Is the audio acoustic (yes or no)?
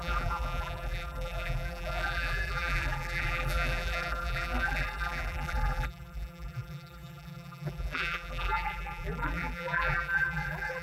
no